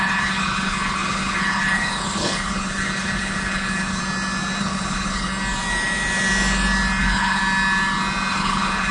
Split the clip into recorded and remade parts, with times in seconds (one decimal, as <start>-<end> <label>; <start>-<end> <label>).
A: 0.0-4.0 remade; 4.0-4.6 recorded; 4.6-5.3 remade; 5.3-7.0 recorded; 7.0-7.4 remade; 7.4-8.3 recorded; 8.3-8.9 remade